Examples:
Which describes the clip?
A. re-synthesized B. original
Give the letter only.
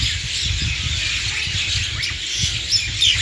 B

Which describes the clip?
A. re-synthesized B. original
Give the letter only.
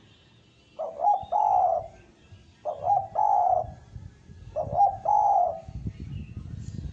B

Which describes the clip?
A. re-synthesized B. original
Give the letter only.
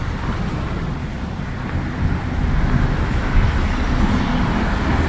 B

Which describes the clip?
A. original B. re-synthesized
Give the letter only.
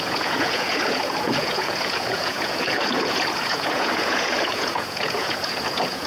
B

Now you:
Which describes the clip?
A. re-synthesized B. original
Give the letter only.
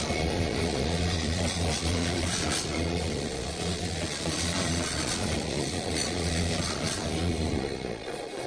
A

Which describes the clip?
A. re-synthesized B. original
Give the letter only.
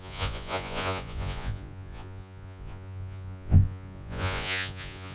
A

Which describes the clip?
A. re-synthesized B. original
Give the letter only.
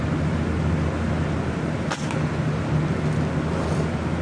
B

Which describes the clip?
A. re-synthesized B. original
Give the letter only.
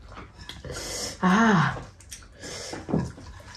B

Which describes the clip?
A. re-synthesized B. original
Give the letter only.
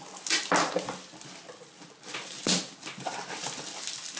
B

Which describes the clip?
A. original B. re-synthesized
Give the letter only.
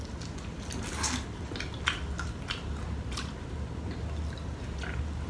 A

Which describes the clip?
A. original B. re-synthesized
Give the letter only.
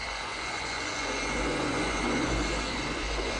B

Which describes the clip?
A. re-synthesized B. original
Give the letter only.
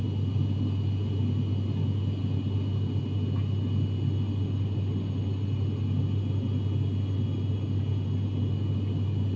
B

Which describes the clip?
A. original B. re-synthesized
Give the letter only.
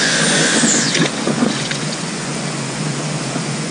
B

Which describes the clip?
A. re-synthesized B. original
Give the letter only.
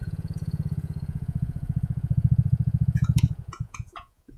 A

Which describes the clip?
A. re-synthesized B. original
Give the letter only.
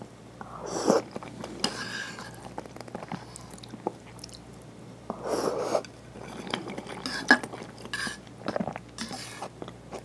B